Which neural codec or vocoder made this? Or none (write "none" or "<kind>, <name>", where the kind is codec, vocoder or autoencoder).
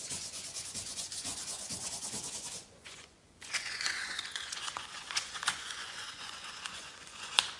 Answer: vocoder, Vocos